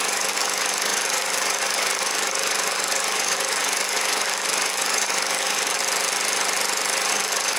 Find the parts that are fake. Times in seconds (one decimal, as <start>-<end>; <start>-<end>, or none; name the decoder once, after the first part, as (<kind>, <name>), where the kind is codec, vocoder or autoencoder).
0.0-5.8 (codec, DAC); 7.1-7.6